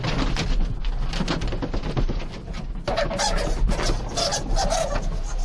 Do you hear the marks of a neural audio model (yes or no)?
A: no